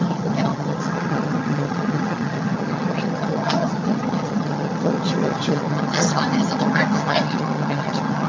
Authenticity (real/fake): fake